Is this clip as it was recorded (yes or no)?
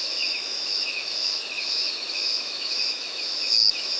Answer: no